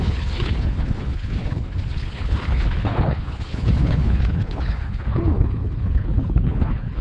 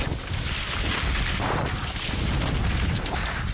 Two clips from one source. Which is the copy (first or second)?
first